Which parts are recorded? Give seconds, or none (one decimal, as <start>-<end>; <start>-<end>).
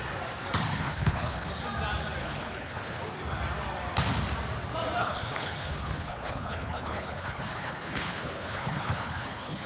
0.0-0.7; 1.5-2.2; 3.0-5.0